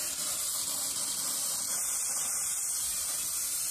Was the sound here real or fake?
real